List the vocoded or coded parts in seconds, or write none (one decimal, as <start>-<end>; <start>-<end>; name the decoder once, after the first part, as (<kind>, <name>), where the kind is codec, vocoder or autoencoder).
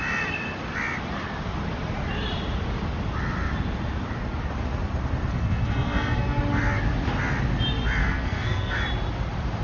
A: 5.3-6.4 (codec, SNAC); 8.0-8.8